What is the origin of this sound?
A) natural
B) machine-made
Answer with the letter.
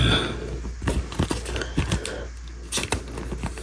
A